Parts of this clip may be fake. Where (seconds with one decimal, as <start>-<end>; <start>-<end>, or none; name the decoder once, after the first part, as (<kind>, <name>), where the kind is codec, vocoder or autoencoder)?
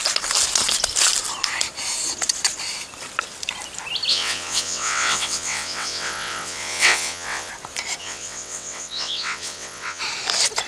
4.1-7.5 (vocoder, WaveNeXt); 8.0-10.0